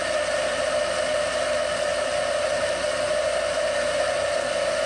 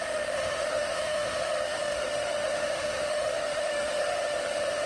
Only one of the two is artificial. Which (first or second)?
second